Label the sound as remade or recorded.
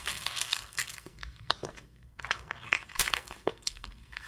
remade